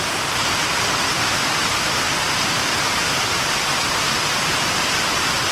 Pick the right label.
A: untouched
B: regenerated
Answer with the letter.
B